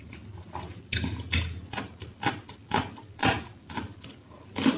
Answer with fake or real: real